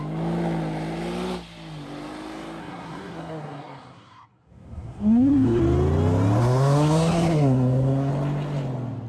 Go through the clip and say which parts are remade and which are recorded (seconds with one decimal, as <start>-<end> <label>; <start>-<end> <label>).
0.0-2.6 recorded; 2.6-5.6 remade; 5.6-6.4 recorded; 6.4-8.1 remade; 8.1-9.1 recorded